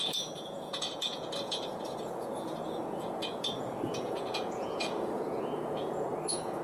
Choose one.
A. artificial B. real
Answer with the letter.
A